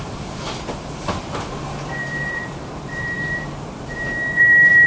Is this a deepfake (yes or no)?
yes